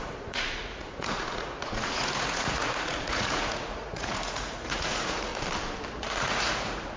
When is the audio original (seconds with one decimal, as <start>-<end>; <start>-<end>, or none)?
5.3-5.9